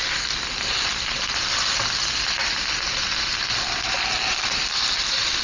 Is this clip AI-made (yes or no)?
no